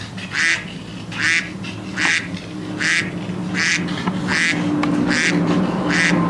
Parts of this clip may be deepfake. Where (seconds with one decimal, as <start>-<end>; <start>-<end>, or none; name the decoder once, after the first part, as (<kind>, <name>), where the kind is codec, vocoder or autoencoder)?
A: none